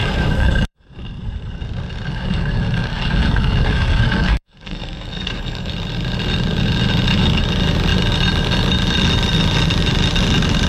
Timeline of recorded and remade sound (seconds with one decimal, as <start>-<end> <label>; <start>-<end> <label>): 0.0-1.6 remade; 1.6-2.1 recorded; 2.1-5.7 remade; 5.7-10.7 recorded